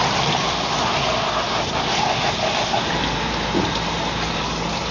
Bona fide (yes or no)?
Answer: yes